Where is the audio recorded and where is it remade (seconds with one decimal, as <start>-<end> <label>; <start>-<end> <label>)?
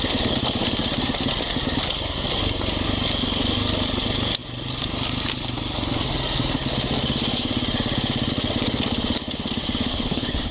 0.0-9.9 recorded; 9.9-10.5 remade